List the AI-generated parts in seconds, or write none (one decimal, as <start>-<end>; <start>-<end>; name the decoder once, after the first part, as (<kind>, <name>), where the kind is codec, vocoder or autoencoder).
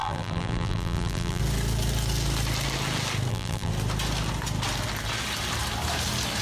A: 0.0-1.4 (vocoder, BigVGAN v2); 3.3-3.7